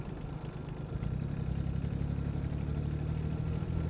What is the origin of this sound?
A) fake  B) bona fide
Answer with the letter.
A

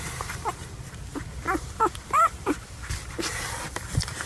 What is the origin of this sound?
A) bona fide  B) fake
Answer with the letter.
B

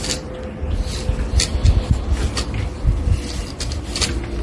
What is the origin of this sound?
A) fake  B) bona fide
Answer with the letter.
B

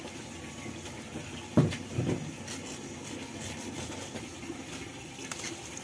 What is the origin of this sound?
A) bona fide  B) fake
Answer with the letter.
A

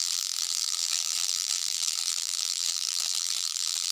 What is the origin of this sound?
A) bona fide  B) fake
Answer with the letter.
B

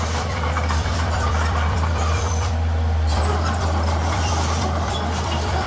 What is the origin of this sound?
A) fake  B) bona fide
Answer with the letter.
A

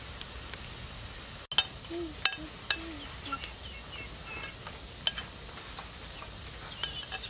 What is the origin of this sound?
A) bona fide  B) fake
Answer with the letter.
A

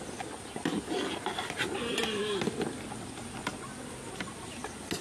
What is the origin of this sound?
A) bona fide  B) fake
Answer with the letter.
A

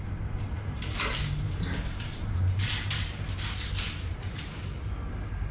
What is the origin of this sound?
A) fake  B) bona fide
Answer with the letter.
A